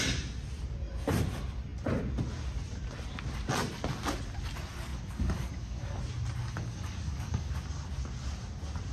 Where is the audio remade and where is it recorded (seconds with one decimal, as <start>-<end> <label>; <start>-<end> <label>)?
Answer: 0.0-4.9 recorded; 4.9-6.0 remade; 6.0-6.4 recorded; 6.4-7.5 remade; 7.5-8.9 recorded